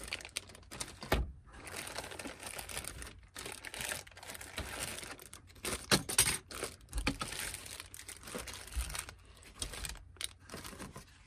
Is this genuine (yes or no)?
yes